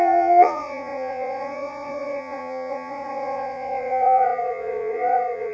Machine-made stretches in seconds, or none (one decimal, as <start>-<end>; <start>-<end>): 0.0-5.5